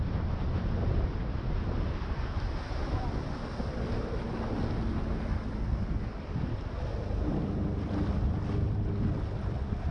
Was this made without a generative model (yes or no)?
yes